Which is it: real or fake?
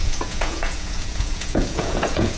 fake